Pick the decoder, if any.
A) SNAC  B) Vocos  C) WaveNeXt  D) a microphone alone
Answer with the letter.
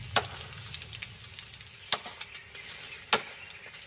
D